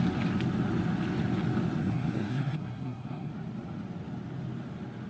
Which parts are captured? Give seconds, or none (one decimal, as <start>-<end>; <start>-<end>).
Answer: 0.0-1.8; 3.3-5.1